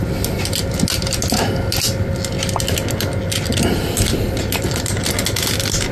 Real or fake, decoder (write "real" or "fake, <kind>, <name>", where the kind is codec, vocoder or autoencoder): real